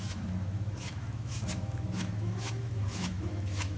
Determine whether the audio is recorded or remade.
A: remade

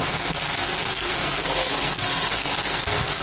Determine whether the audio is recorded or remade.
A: remade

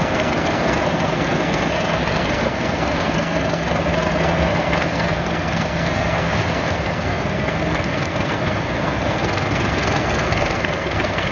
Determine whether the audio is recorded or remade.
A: remade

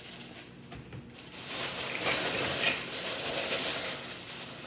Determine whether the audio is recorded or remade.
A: recorded